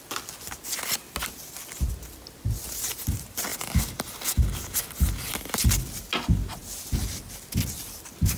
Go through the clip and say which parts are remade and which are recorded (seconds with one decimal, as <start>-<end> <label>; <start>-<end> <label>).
0.0-8.4 recorded